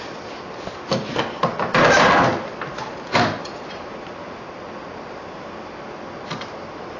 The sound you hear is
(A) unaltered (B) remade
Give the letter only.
A